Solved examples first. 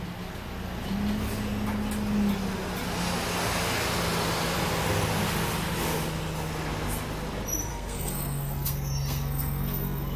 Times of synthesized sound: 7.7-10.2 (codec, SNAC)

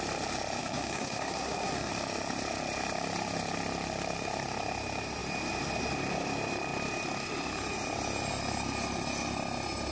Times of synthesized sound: 0.6-1.9 (codec, SNAC)

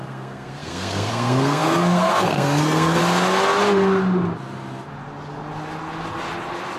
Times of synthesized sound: 0.0-3.0 (codec, SNAC)

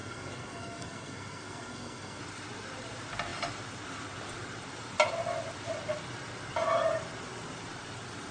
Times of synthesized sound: 0.0-2.2 (codec, SNAC)

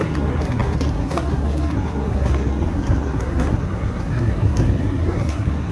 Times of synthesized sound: 0.0-5.7 (codec, SNAC)

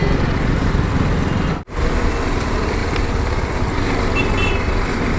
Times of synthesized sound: none